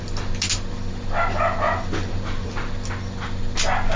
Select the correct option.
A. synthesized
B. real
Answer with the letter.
B